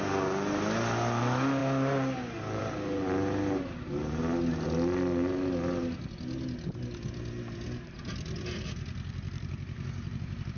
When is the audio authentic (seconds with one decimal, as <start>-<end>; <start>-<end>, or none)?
0.0-10.6